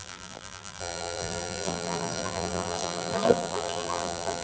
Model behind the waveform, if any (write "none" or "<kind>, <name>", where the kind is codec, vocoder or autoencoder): vocoder, BigVGAN v2